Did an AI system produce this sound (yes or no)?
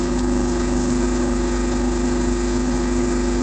yes